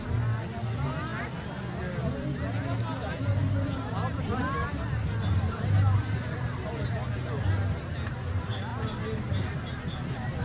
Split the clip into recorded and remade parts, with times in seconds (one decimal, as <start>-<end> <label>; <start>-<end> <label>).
0.0-10.4 recorded